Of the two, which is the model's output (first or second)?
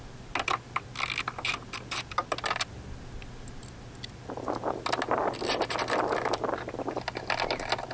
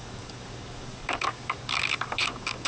second